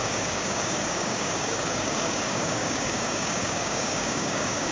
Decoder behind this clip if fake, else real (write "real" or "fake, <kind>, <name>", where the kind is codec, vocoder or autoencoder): fake, codec, DAC